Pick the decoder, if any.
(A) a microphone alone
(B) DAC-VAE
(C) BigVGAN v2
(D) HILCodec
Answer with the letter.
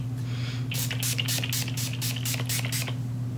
A